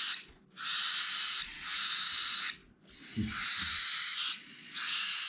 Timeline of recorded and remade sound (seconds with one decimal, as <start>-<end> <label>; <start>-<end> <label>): 0.0-4.1 recorded; 4.1-4.8 remade; 4.8-5.3 recorded